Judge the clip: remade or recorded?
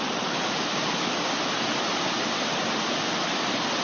recorded